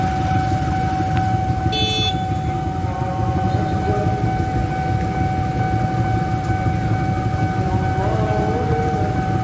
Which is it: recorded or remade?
recorded